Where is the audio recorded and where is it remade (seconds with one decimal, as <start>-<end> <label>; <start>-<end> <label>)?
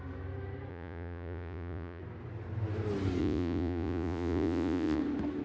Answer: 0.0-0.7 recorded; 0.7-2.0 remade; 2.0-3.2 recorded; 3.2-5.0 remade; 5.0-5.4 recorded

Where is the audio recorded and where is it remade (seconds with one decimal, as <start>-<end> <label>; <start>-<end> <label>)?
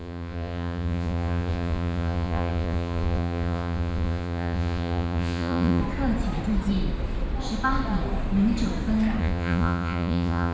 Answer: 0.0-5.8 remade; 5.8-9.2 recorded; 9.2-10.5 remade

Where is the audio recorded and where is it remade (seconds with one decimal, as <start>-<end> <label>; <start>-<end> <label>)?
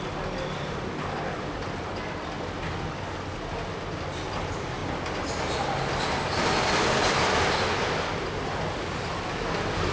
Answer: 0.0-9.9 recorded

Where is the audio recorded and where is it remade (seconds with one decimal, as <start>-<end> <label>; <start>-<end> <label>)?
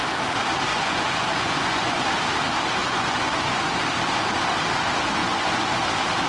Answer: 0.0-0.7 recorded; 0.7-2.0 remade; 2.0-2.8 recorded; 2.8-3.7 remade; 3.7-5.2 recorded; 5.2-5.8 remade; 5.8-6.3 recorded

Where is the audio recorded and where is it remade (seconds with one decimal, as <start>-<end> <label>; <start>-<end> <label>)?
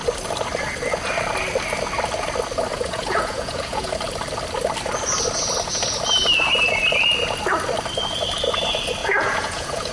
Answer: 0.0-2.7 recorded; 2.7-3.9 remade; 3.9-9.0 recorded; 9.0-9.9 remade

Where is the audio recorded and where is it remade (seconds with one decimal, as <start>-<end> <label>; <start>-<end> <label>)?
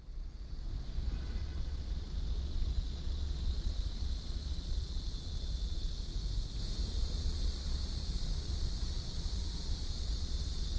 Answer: 0.0-0.7 remade; 0.7-1.4 recorded; 1.4-6.1 remade; 6.1-6.9 recorded; 6.9-10.8 remade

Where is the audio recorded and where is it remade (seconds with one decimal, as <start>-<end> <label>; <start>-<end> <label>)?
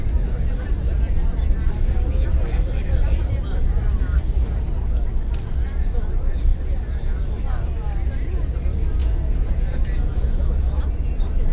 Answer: 0.0-9.0 recorded; 9.0-10.8 remade; 10.8-11.5 recorded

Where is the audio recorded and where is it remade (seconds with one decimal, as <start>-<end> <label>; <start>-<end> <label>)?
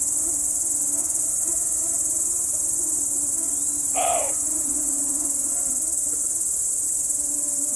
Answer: 0.0-1.0 recorded; 1.0-1.5 remade; 1.5-4.1 recorded; 4.1-5.5 remade; 5.5-7.8 recorded